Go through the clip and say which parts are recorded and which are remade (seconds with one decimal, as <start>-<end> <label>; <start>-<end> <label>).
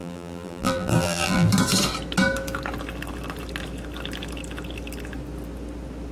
0.0-1.5 remade; 1.5-6.1 recorded